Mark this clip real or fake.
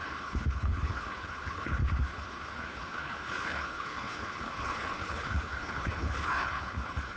fake